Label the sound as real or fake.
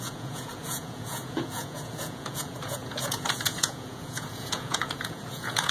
fake